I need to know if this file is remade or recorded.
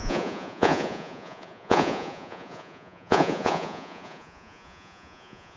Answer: remade